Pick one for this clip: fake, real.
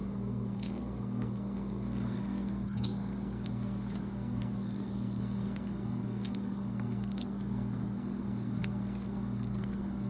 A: fake